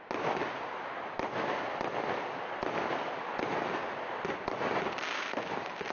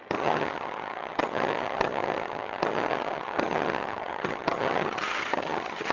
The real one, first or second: first